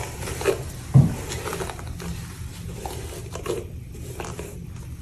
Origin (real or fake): real